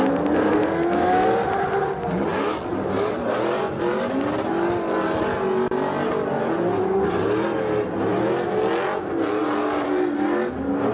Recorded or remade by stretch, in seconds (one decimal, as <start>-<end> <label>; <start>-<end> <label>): 0.0-10.9 recorded